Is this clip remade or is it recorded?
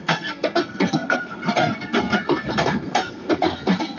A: remade